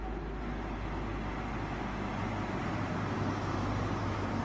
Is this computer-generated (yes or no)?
no